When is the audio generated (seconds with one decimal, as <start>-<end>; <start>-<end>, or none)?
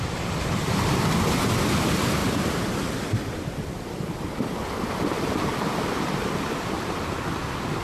0.0-7.0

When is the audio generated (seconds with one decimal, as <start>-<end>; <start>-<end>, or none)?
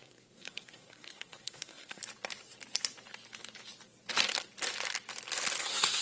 0.0-2.0; 5.6-6.0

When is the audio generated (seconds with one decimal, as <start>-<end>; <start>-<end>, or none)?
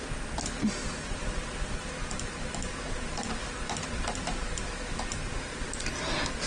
1.2-5.1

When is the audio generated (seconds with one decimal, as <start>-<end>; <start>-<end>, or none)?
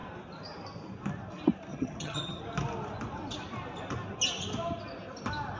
1.7-2.4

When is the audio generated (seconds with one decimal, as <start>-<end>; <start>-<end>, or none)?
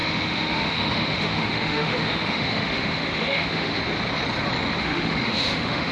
0.0-3.8; 4.8-5.9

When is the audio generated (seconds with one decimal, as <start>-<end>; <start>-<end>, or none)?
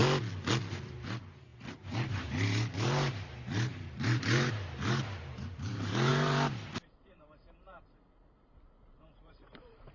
0.7-9.9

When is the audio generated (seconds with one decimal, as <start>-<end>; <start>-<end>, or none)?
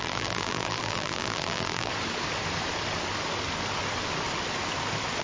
0.0-1.9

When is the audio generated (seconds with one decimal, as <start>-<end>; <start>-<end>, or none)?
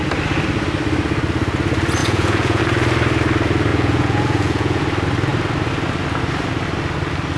2.0-2.6; 3.7-4.8